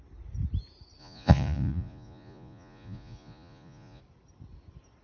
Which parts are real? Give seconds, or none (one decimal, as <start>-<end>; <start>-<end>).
0.0-1.0; 4.0-5.0